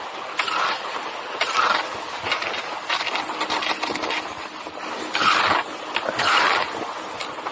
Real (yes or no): yes